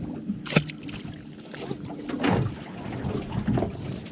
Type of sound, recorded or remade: recorded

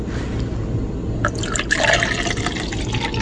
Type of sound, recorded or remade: recorded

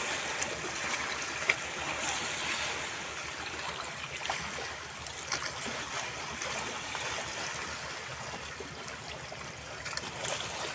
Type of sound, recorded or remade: recorded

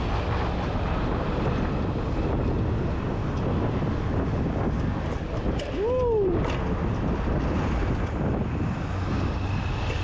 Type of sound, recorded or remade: recorded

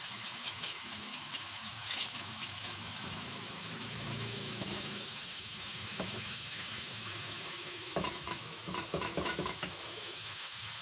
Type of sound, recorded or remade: remade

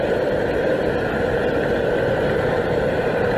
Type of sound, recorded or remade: remade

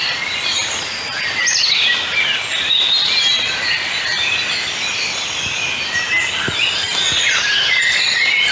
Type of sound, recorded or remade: recorded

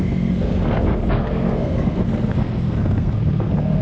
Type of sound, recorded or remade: remade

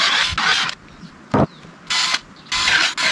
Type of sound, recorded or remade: recorded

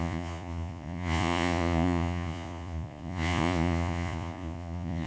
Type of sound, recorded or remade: remade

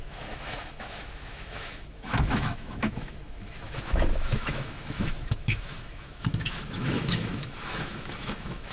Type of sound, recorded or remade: remade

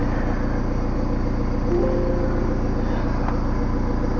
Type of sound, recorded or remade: recorded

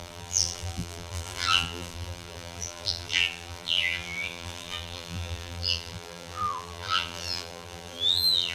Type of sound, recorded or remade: remade